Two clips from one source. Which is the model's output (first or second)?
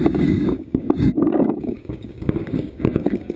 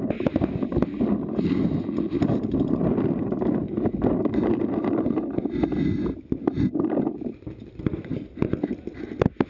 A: first